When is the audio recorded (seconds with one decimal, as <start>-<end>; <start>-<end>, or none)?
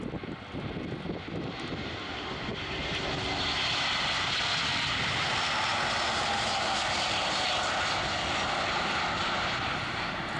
0.0-10.4